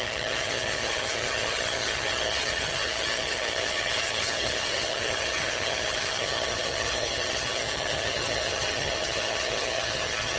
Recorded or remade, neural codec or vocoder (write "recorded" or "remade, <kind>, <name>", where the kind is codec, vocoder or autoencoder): remade, vocoder, HiFi-GAN